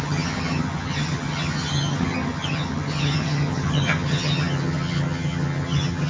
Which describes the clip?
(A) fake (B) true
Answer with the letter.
A